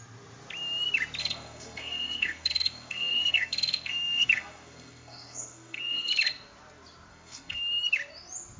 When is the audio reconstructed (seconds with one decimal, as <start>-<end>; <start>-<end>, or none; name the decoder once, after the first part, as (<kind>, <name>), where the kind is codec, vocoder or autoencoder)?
1.2-6.1 (codec, SNAC); 7.1-7.6